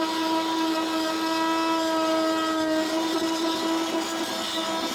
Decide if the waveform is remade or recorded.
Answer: recorded